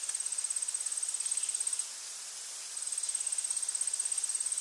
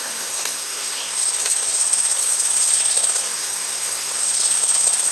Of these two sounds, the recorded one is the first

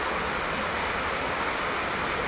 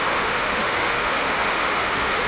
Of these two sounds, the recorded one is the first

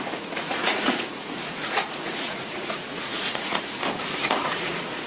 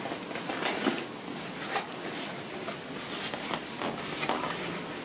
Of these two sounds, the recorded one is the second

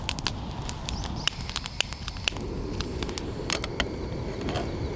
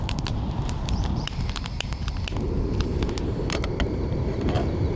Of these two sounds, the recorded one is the first